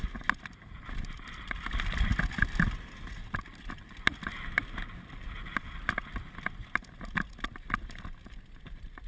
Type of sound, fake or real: real